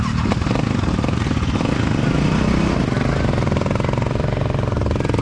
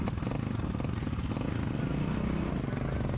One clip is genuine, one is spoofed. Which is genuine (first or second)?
second